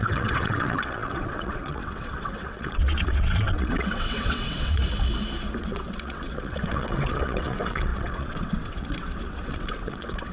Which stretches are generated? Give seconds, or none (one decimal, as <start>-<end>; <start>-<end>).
0.0-4.8; 5.6-10.3